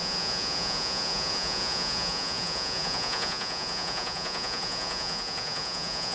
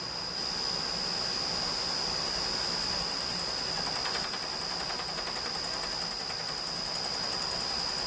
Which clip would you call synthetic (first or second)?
first